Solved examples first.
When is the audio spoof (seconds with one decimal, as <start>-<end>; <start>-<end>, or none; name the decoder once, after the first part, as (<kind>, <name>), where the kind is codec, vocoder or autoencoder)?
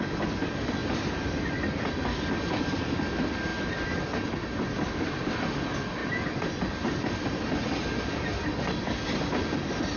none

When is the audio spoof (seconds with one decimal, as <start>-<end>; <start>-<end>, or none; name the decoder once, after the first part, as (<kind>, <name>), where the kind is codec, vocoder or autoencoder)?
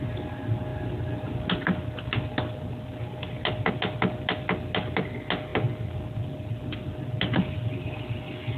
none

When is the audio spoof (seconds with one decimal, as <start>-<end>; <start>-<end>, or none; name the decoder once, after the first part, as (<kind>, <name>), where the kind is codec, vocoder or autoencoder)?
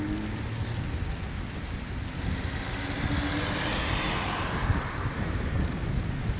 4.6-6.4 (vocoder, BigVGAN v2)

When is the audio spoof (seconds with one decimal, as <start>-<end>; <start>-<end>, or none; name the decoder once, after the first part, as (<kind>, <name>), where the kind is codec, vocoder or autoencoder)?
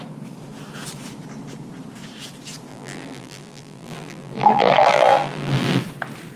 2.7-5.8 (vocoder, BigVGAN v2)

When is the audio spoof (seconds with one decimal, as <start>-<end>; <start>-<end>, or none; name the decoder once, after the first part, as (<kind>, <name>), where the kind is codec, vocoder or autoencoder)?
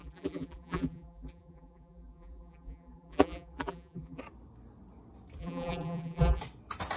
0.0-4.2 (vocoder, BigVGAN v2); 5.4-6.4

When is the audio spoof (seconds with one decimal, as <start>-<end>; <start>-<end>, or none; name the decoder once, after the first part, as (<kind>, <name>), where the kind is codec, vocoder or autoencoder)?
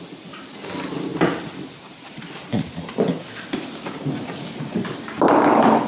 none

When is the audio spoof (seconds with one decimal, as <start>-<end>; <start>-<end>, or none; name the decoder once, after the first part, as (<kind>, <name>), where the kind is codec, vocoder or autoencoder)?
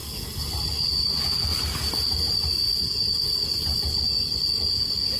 0.0-1.1 (vocoder, BigVGAN v2); 1.5-4.6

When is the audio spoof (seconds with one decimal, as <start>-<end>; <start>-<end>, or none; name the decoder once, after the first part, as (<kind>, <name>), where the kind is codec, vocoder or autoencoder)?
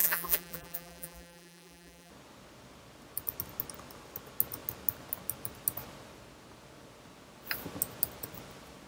0.0-2.1 (vocoder, BigVGAN v2)